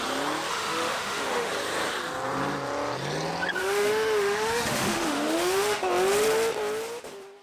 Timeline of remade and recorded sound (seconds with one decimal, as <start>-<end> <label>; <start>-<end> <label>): 0.0-0.5 recorded; 0.5-1.5 remade; 1.5-3.6 recorded; 3.6-5.9 remade; 5.9-7.4 recorded